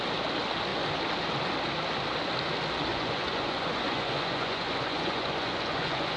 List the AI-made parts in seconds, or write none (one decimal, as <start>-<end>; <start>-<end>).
2.9-6.2